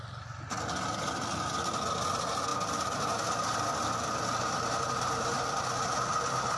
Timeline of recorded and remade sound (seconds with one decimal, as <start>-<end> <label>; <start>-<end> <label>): 0.0-6.6 recorded